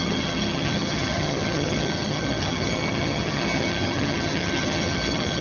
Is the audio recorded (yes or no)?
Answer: no